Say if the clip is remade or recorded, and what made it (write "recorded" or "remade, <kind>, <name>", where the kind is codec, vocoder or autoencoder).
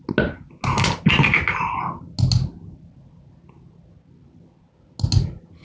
recorded